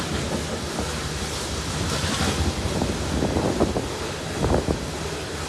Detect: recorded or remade recorded